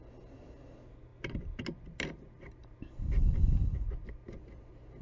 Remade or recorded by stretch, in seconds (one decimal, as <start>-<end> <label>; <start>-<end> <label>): 0.0-5.0 recorded